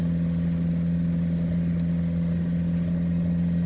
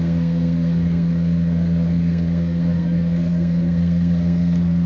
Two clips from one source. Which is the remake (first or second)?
second